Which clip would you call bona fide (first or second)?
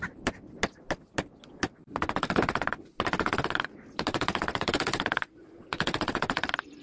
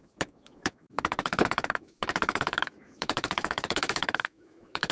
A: first